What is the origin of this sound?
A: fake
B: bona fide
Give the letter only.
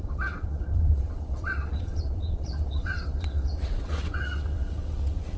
A